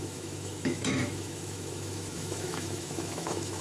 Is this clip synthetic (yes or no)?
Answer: yes